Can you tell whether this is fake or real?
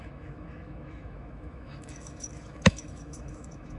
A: fake